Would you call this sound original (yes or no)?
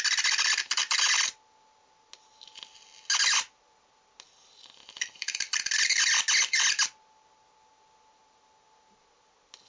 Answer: yes